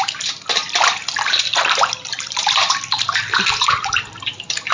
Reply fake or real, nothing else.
real